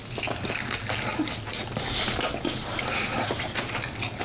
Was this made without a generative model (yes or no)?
yes